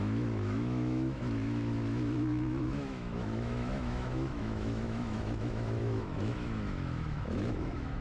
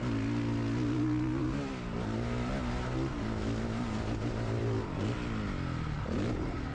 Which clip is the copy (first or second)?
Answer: first